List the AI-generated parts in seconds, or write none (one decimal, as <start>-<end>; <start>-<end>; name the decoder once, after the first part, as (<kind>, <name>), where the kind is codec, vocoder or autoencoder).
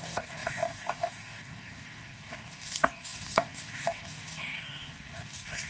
0.0-5.7 (codec, DAC)